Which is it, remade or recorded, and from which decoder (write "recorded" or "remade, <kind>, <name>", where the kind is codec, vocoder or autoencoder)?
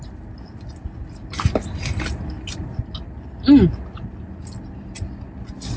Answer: recorded